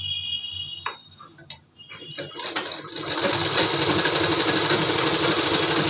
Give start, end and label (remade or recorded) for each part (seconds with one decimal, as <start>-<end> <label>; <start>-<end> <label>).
0.0-1.0 recorded; 1.0-2.6 remade; 2.6-5.9 recorded